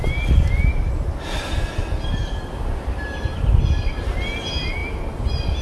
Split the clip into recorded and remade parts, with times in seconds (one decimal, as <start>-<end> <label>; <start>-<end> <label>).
0.0-5.6 recorded